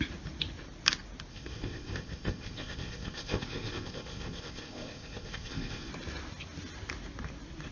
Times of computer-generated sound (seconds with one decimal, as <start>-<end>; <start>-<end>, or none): 1.3-5.9